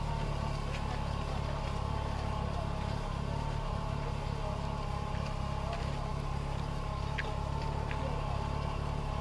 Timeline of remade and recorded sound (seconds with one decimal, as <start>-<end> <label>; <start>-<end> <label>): 0.0-9.2 recorded